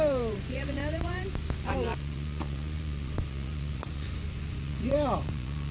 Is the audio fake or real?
fake